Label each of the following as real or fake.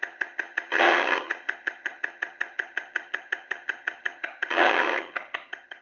fake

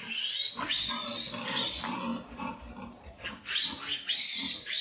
real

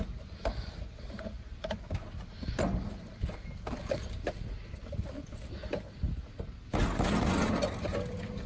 real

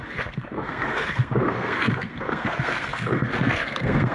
fake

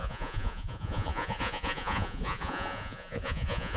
fake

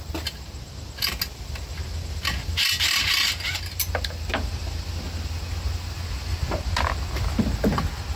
real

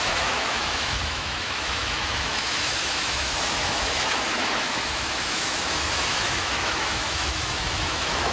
fake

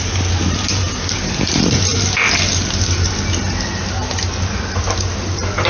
real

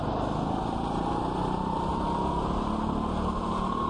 real